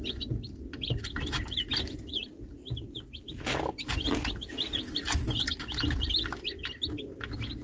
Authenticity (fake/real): real